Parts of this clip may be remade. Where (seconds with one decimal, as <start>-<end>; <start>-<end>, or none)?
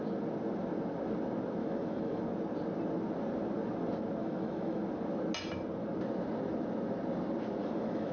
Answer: 1.6-2.2; 4.2-4.8; 7.6-8.1